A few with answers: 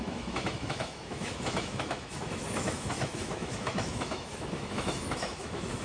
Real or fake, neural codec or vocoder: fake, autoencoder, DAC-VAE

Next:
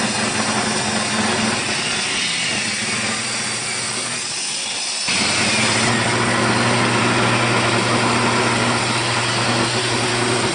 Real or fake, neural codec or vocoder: real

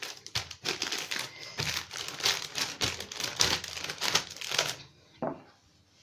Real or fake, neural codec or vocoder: real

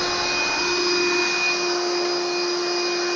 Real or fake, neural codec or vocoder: real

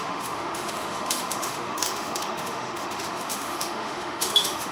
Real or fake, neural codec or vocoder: fake, autoencoder, DAC-VAE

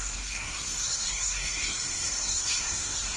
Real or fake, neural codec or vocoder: fake, codec, SNAC